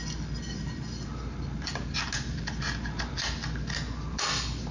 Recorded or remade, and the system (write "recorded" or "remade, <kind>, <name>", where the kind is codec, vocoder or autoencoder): recorded